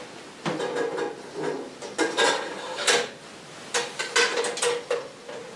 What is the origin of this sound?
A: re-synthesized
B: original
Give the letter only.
B